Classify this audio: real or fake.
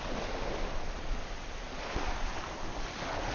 real